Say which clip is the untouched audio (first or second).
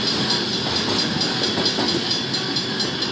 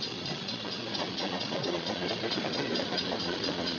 first